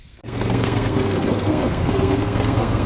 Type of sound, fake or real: fake